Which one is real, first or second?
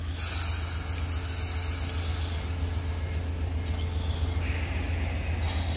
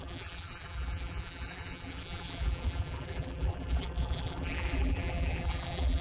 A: first